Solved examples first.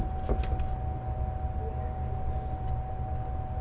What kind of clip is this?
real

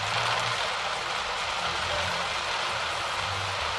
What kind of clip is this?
real